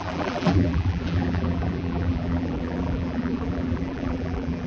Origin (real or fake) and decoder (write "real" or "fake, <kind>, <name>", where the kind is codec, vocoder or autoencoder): fake, vocoder, BigVGAN v2